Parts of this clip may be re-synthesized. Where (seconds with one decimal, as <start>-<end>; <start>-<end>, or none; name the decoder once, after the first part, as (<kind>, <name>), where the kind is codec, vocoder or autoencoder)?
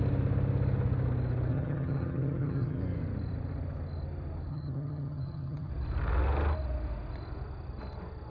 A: 1.5-2.8 (vocoder, HiFi-GAN); 4.5-5.7